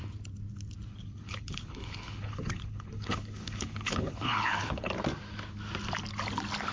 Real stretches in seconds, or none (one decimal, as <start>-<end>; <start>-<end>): 0.0-0.9; 4.9-6.7